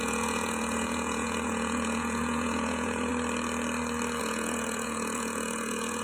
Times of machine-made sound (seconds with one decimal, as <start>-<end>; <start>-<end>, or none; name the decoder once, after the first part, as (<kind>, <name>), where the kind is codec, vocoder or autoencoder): 0.0-3.1 (vocoder, Vocos); 4.2-6.0